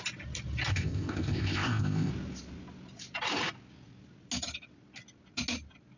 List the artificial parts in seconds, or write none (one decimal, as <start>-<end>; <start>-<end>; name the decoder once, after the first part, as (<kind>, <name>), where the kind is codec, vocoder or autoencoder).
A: 0.7-2.1 (codec, ZipCodec)